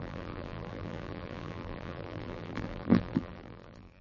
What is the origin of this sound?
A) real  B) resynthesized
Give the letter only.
B